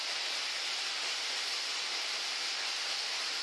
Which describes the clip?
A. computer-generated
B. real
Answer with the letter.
A